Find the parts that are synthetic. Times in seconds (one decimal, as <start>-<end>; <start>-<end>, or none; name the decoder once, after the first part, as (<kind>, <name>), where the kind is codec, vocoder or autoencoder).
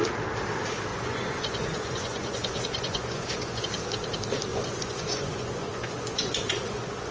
0.9-3.6 (vocoder, Vocos); 4.5-7.1